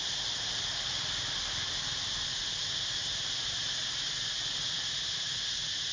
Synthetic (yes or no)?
no